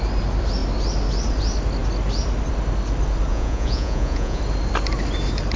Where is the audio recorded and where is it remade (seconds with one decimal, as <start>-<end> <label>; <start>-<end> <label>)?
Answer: 0.0-3.3 recorded; 3.3-4.4 remade; 4.4-5.6 recorded